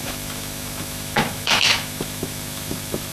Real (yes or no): no